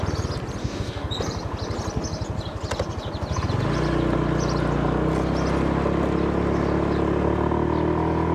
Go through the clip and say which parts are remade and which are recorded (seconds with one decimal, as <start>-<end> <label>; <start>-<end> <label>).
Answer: 0.0-0.6 recorded; 0.6-1.1 remade; 1.1-8.3 recorded